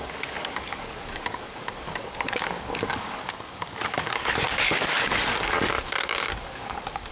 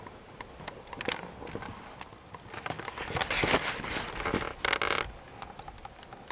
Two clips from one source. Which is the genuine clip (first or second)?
second